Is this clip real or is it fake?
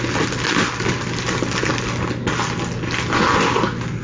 real